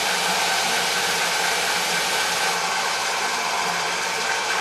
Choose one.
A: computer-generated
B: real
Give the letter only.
A